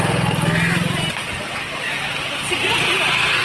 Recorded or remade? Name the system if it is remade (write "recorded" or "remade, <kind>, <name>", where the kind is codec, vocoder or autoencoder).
recorded